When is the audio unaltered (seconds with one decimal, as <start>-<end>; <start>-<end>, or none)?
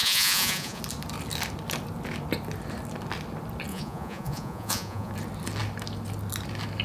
0.8-3.7; 5.1-6.8